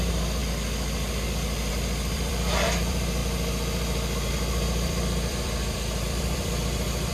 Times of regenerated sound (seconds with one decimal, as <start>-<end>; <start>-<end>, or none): 0.0-0.4; 1.7-3.2; 4.3-7.1